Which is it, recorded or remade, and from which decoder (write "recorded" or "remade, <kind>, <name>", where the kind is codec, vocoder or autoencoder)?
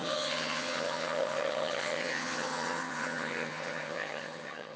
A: remade, vocoder, HiFi-GAN